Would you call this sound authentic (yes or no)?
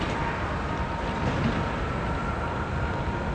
yes